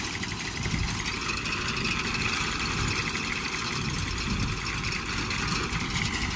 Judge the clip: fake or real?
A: real